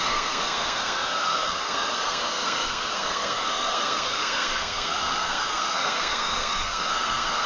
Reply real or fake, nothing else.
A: fake